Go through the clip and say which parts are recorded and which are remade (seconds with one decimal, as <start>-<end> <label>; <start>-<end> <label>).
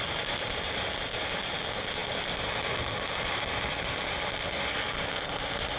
0.0-5.8 recorded